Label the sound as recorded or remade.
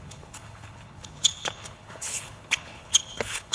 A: remade